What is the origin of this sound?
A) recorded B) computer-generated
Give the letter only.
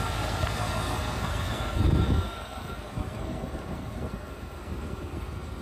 B